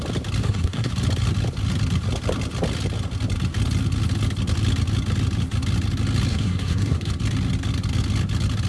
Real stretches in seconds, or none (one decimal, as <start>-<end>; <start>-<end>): 0.0-0.4; 0.9-6.3; 7.1-8.7